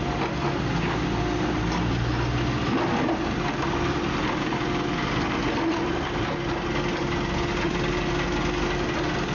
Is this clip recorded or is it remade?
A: recorded